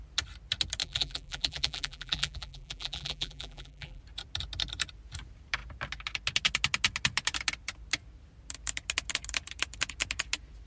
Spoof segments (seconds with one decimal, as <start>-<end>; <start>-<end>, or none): 0.8-4.0

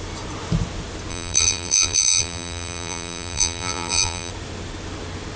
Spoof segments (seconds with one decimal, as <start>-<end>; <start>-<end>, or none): 1.1-4.3

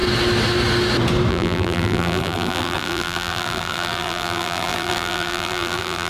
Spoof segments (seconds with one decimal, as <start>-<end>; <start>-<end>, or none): 1.3-6.1

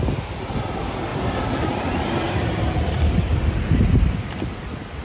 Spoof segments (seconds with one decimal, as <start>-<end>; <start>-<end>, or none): 1.1-4.1

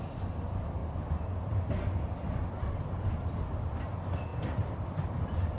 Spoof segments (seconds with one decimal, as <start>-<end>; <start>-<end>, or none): 0.0-0.8; 3.8-5.6